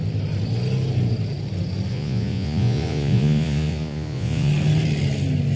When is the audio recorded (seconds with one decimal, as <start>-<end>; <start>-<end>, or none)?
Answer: 0.0-1.9; 4.5-5.6